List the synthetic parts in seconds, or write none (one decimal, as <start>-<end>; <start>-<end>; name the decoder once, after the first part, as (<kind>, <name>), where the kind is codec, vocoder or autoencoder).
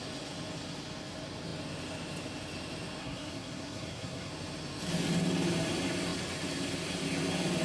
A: 3.0-4.3 (codec, SNAC)